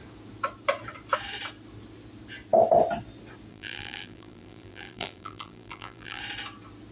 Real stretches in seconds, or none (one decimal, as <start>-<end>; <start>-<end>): 0.0-3.5; 6.2-6.9